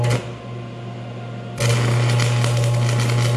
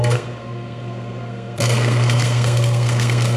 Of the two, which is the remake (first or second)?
second